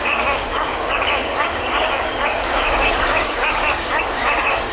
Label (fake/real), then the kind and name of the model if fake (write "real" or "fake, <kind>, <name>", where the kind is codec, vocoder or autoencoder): fake, codec, DAC